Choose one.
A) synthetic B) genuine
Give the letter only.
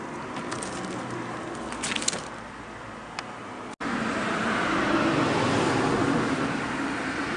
B